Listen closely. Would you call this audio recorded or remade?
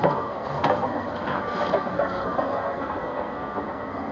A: remade